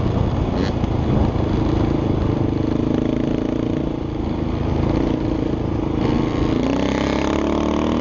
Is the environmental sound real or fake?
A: real